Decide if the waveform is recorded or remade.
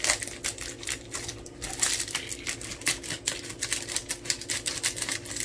recorded